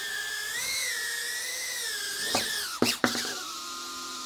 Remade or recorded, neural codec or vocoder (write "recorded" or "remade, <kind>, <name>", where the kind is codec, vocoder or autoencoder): remade, vocoder, BigVGAN v2